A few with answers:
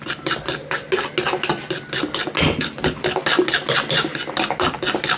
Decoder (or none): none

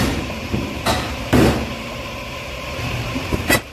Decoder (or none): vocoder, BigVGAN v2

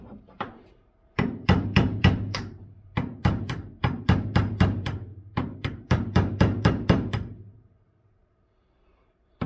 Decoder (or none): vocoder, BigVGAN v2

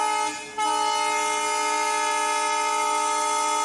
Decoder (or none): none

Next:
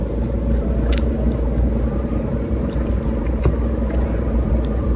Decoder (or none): vocoder, BigVGAN v2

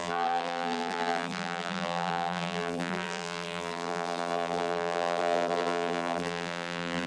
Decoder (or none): vocoder, BigVGAN v2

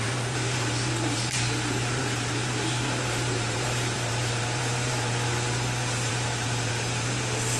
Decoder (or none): vocoder, BigVGAN v2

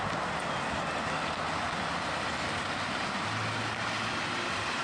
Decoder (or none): none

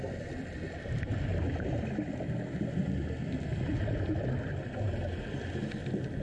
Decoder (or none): none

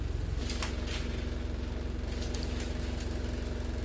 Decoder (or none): none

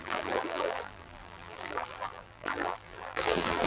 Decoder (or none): vocoder, BigVGAN v2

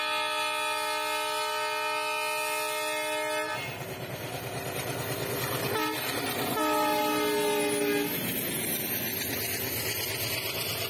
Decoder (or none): none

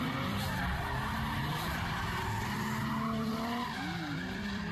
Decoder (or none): vocoder, BigVGAN v2